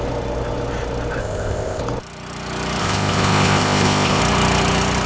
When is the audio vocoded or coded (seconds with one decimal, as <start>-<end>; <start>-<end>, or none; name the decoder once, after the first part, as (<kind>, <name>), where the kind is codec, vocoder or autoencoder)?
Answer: 1.2-1.8 (codec, ZipCodec); 2.8-4.2